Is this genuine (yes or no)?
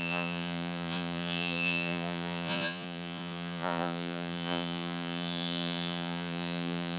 no